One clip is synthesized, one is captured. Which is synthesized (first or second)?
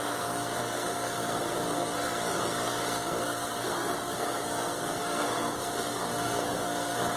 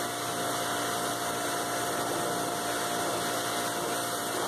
first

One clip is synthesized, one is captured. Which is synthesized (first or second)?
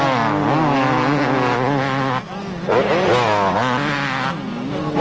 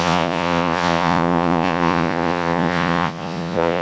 second